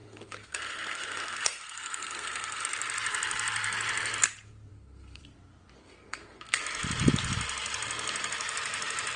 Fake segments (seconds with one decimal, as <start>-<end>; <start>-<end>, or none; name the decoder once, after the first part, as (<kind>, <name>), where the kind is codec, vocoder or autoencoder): 0.0-2.6 (codec, SNAC); 4.7-5.2; 5.8-6.6